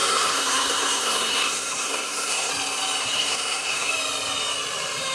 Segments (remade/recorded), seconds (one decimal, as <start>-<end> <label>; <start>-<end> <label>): 0.0-2.5 remade; 2.5-3.0 recorded; 3.0-3.9 remade; 3.9-5.1 recorded

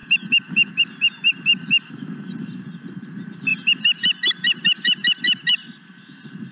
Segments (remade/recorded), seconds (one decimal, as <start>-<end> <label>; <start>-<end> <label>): 0.0-0.7 remade; 0.7-1.5 recorded; 1.5-2.3 remade; 2.3-6.5 recorded